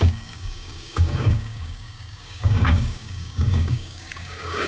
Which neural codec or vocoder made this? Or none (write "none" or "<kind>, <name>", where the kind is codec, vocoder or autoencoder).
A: codec, DAC